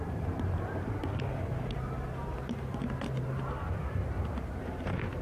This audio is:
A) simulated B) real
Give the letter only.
A